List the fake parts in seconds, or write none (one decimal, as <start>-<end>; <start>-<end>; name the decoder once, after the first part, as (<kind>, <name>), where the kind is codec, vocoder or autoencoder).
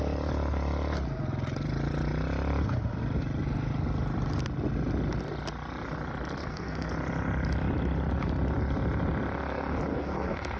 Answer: 6.4-6.9 (codec, SNAC); 9.9-10.6